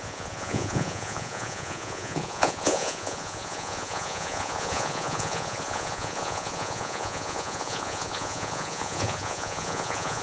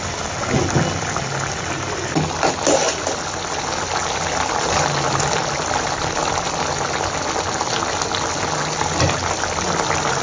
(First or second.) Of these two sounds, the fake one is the first